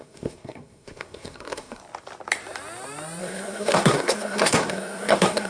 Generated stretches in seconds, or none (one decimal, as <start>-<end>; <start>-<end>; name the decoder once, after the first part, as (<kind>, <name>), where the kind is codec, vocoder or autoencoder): 0.0-1.8 (codec, SNAC); 3.2-5.5